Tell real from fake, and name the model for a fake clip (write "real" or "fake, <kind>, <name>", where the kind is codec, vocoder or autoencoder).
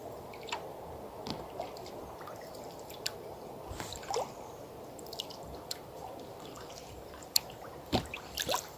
fake, vocoder, BigVGAN v2